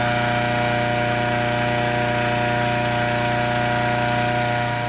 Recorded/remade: recorded